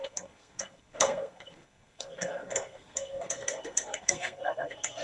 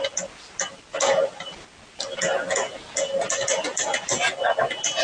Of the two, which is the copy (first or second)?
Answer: first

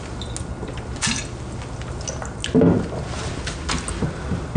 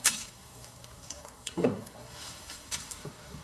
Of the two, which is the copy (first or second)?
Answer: second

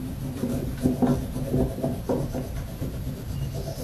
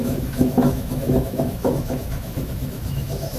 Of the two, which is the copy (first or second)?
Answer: second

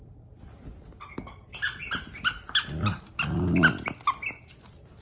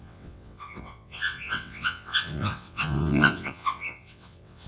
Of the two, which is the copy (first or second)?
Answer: second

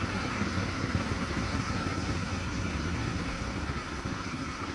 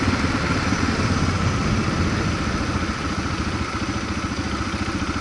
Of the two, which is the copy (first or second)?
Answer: first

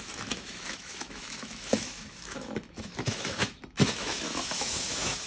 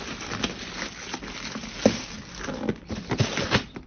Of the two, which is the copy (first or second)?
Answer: first